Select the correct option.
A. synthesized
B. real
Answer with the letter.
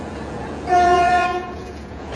A